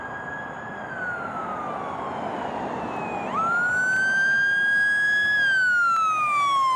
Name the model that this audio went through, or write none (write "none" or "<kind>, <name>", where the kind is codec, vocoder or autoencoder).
none